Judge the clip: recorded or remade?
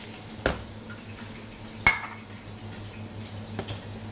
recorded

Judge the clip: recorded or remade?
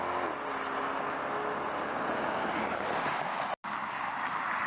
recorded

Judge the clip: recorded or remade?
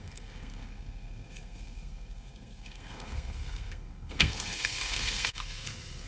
remade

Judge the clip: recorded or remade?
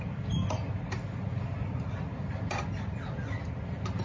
recorded